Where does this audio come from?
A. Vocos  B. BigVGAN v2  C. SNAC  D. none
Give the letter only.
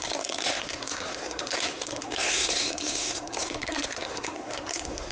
C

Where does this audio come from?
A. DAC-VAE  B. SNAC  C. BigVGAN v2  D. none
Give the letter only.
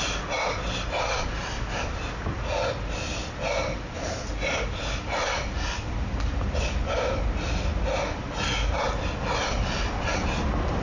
D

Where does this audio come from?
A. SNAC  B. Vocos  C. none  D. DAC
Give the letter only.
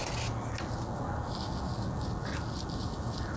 C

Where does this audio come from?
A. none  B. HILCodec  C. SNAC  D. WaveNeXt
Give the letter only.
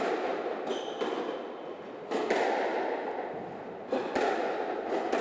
A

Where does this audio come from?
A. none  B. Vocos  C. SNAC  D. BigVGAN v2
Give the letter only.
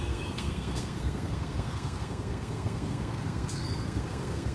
C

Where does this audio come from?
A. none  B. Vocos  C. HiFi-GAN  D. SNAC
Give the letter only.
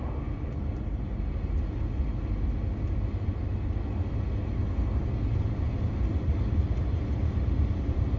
A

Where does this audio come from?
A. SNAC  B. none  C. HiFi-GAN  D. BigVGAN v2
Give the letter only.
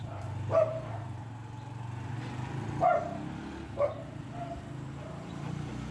B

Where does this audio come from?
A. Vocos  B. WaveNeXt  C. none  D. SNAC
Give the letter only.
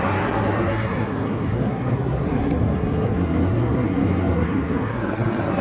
D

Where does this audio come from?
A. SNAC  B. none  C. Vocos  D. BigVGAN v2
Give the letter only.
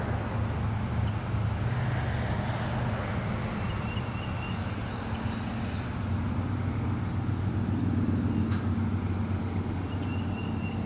B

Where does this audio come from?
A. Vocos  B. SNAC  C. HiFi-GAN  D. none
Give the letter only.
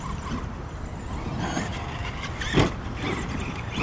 D